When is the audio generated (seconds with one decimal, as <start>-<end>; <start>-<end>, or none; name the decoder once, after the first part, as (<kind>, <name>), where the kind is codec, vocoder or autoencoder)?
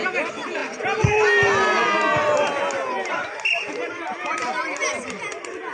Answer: none